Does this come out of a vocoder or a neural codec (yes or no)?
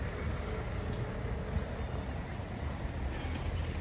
no